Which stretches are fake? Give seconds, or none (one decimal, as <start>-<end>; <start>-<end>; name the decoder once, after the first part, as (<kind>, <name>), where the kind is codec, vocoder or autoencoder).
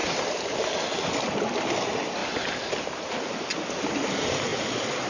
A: 2.2-2.7 (vocoder, BigVGAN v2); 4.5-5.1